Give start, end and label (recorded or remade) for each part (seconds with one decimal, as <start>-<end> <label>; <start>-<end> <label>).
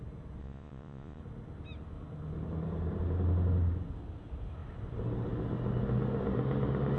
0.0-0.4 recorded; 0.4-1.2 remade; 1.2-7.0 recorded